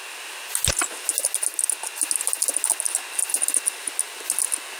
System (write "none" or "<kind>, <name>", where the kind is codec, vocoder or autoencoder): none